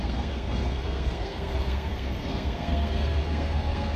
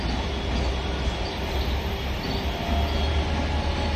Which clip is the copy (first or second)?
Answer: first